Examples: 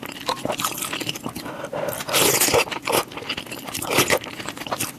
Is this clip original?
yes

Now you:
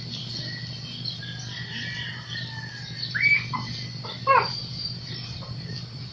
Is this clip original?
yes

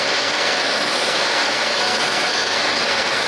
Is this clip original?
no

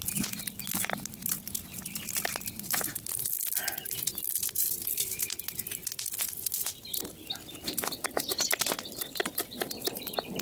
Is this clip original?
yes